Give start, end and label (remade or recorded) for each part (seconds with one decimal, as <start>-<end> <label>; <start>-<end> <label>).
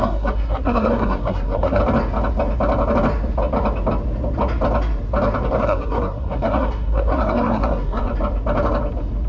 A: 0.0-1.8 remade; 1.8-5.5 recorded; 5.5-8.1 remade; 8.1-9.3 recorded